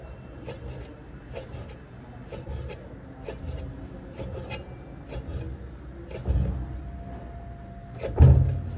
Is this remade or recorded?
recorded